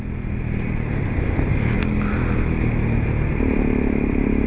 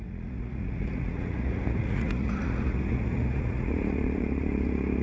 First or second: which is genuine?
first